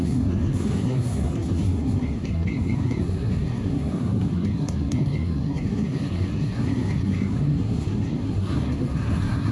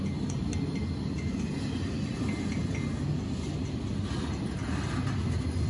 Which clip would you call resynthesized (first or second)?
first